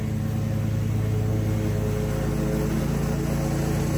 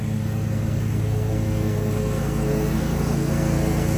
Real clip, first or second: first